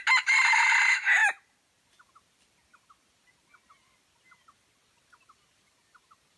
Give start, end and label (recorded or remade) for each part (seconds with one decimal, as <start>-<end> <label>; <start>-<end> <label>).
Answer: 0.0-6.4 recorded